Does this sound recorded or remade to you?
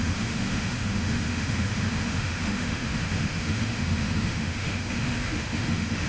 remade